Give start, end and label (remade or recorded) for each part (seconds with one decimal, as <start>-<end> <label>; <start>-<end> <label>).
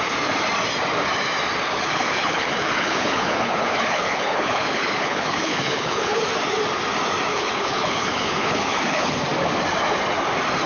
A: 0.0-1.7 recorded; 1.7-6.2 remade; 6.2-7.3 recorded; 7.3-9.2 remade; 9.2-10.7 recorded